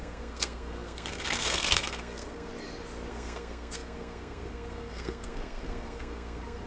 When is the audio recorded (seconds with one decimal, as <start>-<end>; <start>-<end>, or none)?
2.5-3.1

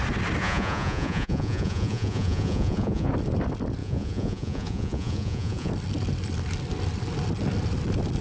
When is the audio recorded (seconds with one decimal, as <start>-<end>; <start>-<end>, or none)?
0.0-0.4; 3.1-3.8; 5.7-8.2